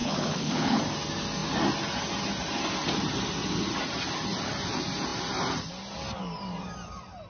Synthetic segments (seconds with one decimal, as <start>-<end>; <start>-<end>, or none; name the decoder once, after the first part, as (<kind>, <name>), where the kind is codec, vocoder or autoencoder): 0.0-0.8 (codec, HILCodec)